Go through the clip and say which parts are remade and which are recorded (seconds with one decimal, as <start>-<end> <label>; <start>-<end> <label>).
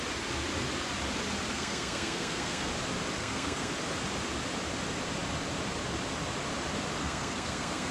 0.0-1.5 recorded; 1.5-2.7 remade; 2.7-3.2 recorded; 3.2-3.7 remade; 3.7-7.0 recorded; 7.0-7.9 remade